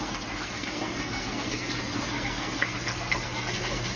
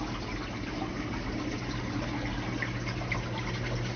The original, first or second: second